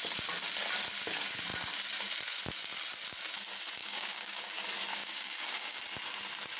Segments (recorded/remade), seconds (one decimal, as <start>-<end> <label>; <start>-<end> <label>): 0.0-3.8 recorded; 3.8-4.6 remade; 4.6-5.0 recorded; 5.0-5.8 remade; 5.8-6.6 recorded

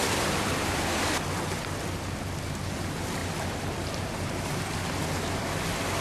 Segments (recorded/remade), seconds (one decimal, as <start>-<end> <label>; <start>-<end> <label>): 0.0-0.9 remade; 0.9-3.2 recorded; 3.2-5.5 remade; 5.5-6.0 recorded

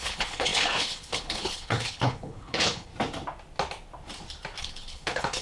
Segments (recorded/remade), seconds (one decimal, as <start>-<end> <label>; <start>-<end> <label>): 0.0-2.9 remade; 2.9-4.6 recorded; 4.6-5.4 remade

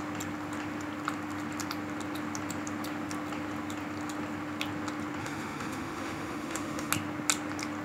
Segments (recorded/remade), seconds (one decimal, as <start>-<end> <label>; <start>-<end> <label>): 0.0-5.2 recorded; 5.2-6.9 remade; 6.9-7.8 recorded

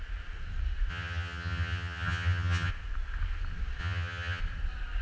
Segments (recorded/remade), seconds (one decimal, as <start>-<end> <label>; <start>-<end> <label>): 0.0-0.9 recorded; 0.9-2.7 remade; 2.7-3.8 recorded; 3.8-4.4 remade; 4.4-5.0 recorded

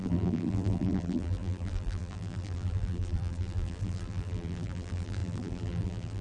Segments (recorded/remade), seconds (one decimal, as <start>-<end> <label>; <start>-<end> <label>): 0.0-6.2 remade

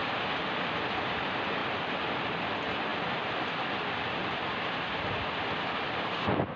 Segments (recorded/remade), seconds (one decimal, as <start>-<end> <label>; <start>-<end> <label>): 0.0-2.9 recorded; 2.9-4.9 remade; 4.9-6.6 recorded